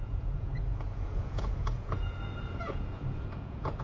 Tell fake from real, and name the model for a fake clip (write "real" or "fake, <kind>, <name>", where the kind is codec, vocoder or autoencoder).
fake, vocoder, Vocos